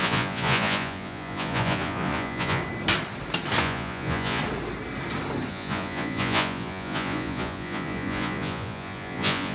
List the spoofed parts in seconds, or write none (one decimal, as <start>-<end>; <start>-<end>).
0.0-2.6; 3.6-4.4; 5.5-9.5